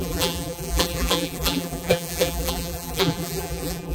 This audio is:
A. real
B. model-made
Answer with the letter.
B